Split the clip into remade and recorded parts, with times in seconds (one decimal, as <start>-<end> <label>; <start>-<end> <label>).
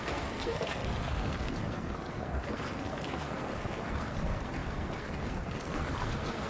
0.0-6.5 remade